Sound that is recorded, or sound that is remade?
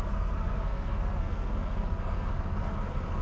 remade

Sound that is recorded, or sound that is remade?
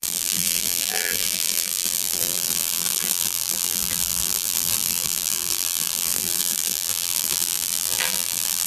remade